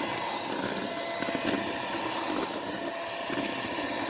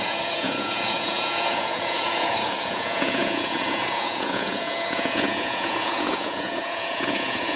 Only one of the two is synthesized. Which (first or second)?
second